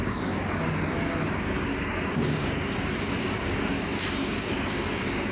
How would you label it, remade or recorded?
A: remade